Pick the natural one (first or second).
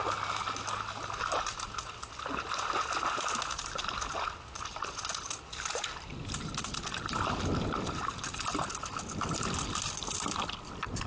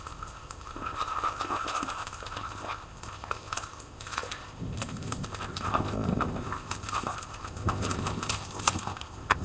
first